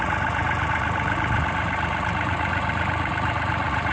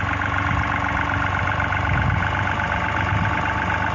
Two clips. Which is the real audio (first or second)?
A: second